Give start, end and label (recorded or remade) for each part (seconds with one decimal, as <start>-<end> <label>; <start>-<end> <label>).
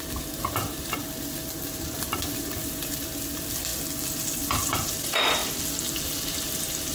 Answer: 0.0-1.0 remade; 1.0-2.6 recorded; 2.6-3.7 remade; 3.7-4.9 recorded; 4.9-5.4 remade; 5.4-6.0 recorded; 6.0-6.9 remade